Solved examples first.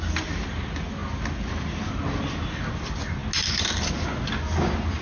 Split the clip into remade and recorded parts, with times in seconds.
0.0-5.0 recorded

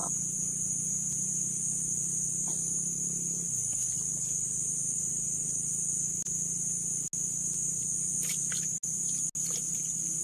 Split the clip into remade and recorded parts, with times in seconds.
0.0-1.3 remade; 1.3-10.2 recorded

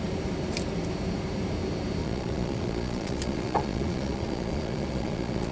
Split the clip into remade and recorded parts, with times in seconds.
0.0-2.0 recorded; 2.0-5.5 remade

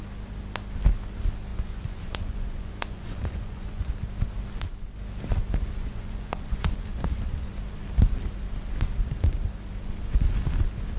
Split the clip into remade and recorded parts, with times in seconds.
0.0-1.5 recorded; 1.5-3.9 remade; 3.9-5.8 recorded; 5.8-7.5 remade; 7.5-11.0 recorded

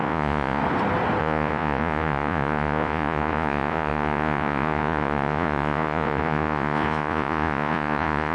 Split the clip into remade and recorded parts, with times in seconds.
0.0-0.6 remade; 0.6-1.2 recorded; 1.2-8.3 remade

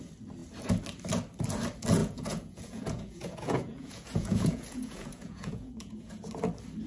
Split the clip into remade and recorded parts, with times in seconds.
0.0-2.0 recorded; 2.0-6.1 remade; 6.1-6.9 recorded

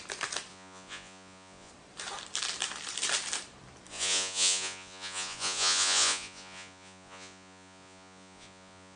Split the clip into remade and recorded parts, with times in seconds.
0.0-0.5 recorded; 0.5-1.7 remade; 1.7-3.9 recorded; 3.9-9.0 remade

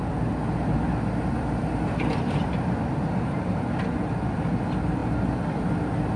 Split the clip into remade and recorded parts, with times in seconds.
0.0-6.2 recorded